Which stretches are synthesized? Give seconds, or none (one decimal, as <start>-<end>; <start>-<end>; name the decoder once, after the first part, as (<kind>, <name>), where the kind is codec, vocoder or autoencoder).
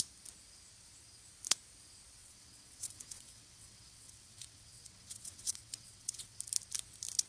2.2-6.4 (vocoder, WaveNeXt)